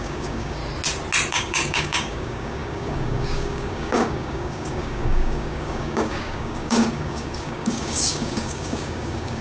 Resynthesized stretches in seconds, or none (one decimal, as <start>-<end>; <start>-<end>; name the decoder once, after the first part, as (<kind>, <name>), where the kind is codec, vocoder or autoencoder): 0.0-0.6 (codec, DAC); 1.3-9.4